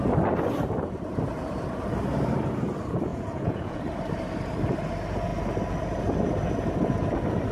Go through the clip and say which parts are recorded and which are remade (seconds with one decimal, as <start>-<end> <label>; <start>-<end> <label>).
0.0-3.1 recorded; 3.1-3.8 remade; 3.8-7.5 recorded